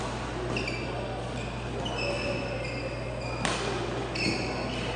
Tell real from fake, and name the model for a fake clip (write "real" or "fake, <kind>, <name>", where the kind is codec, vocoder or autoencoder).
real